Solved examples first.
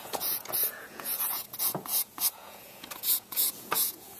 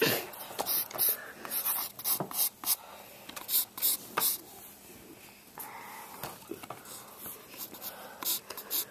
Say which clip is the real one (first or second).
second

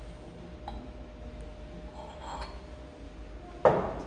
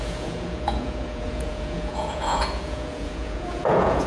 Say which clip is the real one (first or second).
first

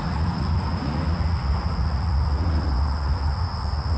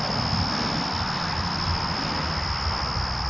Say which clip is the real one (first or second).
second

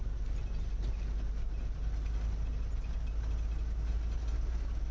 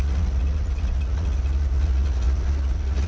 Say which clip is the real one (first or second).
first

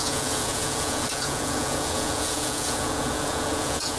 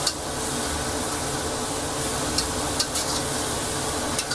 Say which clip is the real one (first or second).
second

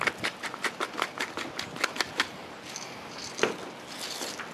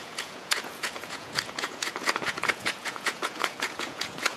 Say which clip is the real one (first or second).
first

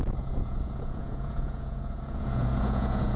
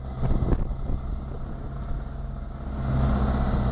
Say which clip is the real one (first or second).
second